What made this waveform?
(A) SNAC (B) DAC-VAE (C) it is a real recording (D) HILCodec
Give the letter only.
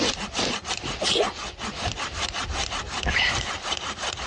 C